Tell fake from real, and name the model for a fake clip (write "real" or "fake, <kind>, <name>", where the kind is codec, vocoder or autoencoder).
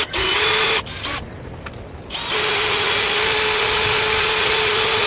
real